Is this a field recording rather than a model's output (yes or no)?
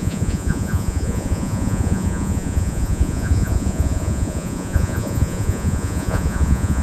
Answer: no